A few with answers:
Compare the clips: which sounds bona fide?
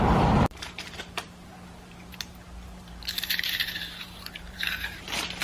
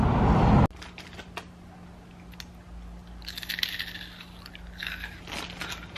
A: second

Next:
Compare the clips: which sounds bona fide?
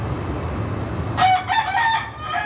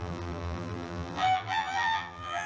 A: first